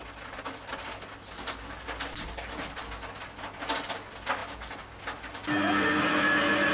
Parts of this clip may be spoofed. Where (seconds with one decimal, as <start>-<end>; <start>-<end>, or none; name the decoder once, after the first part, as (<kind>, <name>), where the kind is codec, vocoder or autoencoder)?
none